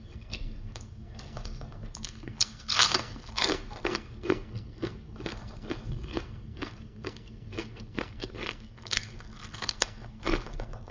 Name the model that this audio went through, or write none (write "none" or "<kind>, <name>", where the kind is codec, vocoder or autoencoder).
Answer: codec, SNAC